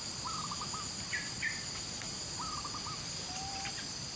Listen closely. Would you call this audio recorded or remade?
recorded